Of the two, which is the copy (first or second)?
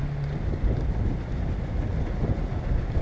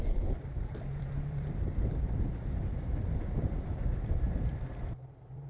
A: second